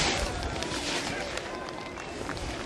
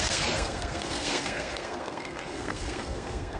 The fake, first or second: second